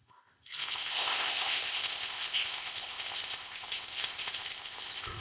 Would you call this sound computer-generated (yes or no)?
yes